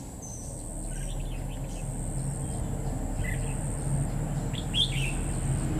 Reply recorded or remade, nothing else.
recorded